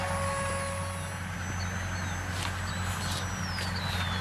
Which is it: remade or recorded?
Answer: recorded